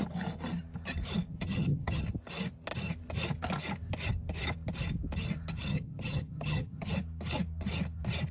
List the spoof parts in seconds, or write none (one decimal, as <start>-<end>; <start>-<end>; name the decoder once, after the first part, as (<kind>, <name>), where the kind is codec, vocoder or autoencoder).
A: 1.3-2.0 (vocoder, HiFi-GAN); 5.7-6.9